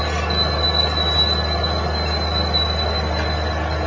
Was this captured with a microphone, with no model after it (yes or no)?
yes